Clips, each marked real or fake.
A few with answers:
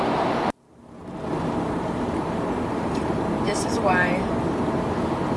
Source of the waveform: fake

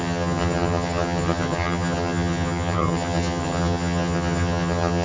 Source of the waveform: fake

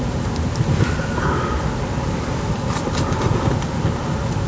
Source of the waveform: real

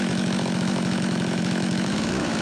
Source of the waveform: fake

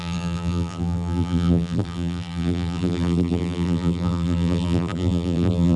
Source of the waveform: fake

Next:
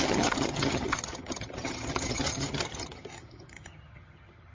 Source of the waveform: fake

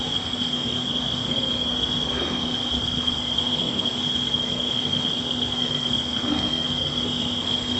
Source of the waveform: fake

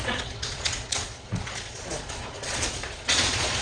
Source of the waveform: fake